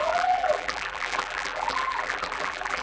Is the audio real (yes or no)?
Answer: no